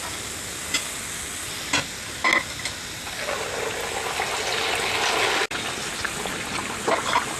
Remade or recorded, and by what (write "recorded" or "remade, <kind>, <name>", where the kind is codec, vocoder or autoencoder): recorded